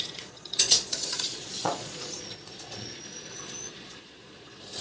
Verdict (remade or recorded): remade